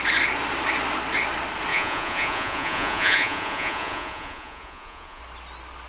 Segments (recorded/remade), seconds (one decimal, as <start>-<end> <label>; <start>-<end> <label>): 0.0-1.7 recorded; 1.7-5.2 remade; 5.2-5.9 recorded